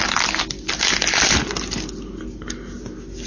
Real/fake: real